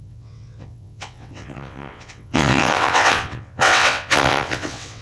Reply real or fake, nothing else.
fake